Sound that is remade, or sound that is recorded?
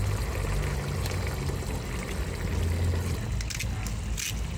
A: recorded